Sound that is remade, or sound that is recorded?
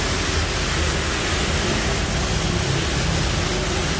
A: recorded